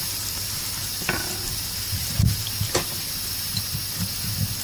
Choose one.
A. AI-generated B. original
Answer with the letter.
B